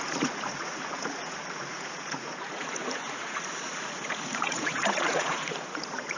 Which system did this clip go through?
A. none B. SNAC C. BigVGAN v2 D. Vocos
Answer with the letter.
D